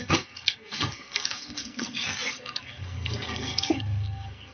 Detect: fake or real fake